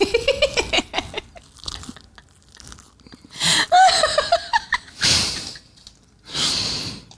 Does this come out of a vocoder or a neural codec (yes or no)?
no